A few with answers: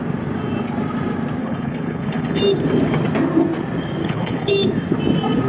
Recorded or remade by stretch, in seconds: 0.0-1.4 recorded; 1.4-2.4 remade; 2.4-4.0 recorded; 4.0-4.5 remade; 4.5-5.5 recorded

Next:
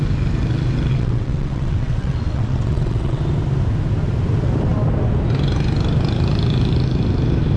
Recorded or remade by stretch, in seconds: 0.0-0.9 recorded; 0.9-3.2 remade; 3.2-7.6 recorded